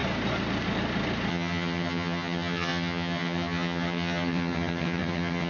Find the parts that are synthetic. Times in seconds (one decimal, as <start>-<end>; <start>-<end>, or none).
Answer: 1.3-5.5